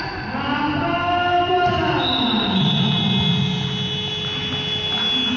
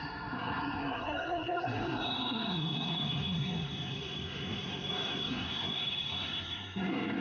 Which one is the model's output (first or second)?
second